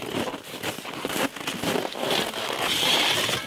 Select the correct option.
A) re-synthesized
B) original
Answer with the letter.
B